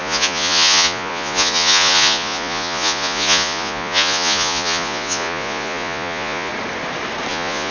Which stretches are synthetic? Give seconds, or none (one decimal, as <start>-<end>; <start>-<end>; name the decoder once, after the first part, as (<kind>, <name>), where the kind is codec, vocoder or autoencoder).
0.0-6.5 (vocoder, Vocos); 7.3-7.7